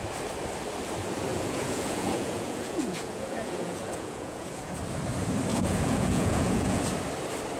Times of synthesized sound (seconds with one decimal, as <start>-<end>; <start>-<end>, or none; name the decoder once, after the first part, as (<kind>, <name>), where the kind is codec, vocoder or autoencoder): 1.3-4.8 (vocoder, Vocos); 5.5-6.8